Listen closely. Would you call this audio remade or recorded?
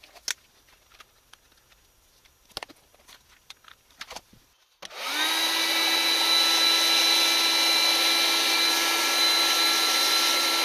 recorded